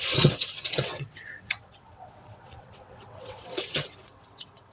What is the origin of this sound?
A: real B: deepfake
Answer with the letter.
B